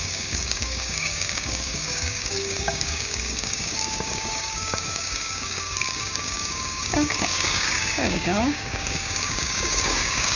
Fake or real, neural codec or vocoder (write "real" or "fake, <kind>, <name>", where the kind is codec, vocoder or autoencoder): fake, codec, DAC